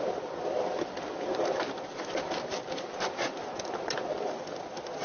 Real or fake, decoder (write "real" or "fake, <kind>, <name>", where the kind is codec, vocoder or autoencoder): real